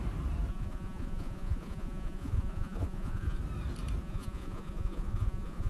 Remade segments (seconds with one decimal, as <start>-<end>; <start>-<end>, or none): 0.5-3.4; 4.0-5.7